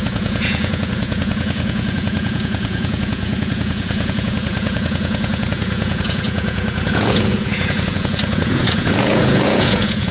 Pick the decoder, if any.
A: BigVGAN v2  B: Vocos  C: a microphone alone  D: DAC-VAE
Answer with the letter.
B